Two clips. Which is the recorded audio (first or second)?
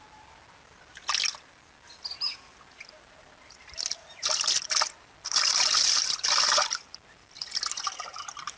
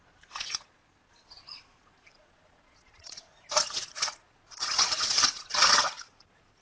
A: first